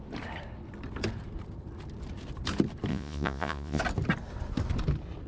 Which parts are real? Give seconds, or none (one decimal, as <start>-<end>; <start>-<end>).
0.0-2.9; 3.8-5.3